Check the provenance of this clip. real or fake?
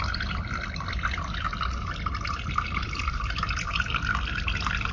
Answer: real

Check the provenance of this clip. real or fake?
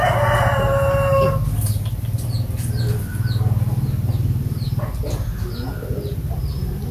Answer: real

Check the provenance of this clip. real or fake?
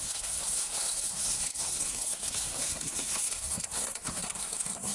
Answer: fake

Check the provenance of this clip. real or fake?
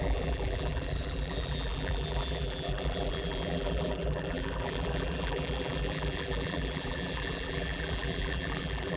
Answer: fake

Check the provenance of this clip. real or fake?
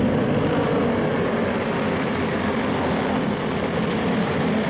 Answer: real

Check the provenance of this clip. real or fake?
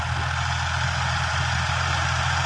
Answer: real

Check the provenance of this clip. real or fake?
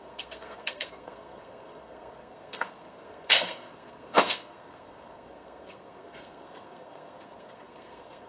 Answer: fake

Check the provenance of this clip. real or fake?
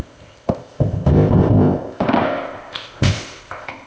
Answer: fake